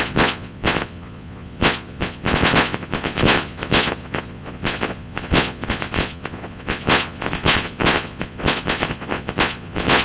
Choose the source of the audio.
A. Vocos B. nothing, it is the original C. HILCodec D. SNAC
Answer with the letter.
A